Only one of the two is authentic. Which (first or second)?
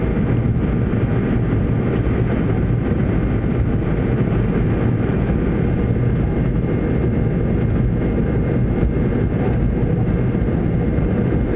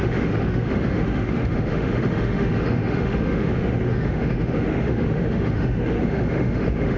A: first